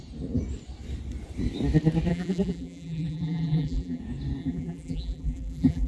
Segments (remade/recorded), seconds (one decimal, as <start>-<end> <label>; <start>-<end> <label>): 0.0-2.1 recorded; 2.1-4.0 remade; 4.0-4.4 recorded; 4.4-5.9 remade